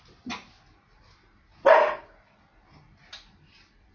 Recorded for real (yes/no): yes